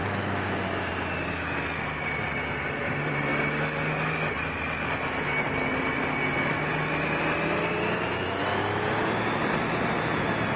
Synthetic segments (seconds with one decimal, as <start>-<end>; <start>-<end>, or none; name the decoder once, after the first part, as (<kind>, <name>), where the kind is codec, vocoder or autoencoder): 0.0-0.9 (autoencoder, DAC-VAE)